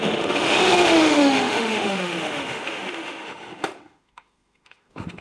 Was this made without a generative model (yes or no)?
no